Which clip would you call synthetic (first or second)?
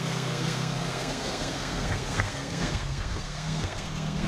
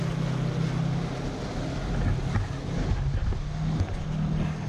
first